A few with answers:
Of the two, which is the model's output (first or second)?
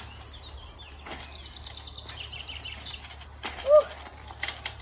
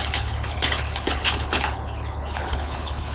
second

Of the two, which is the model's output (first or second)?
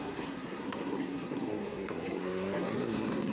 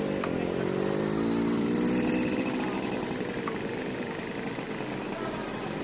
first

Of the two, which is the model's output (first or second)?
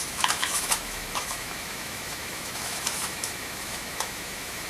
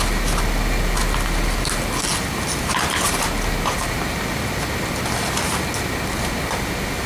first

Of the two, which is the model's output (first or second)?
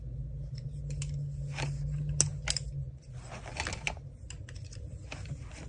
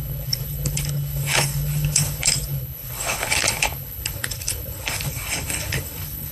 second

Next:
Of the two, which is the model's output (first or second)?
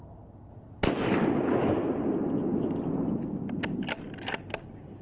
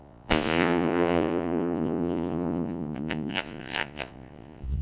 second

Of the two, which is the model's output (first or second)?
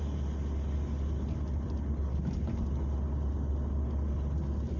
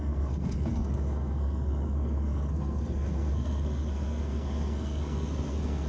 second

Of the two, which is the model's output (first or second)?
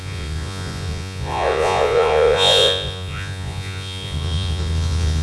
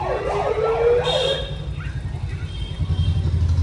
first